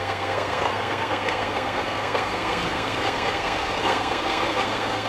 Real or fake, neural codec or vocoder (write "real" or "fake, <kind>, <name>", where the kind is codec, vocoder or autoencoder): fake, codec, SNAC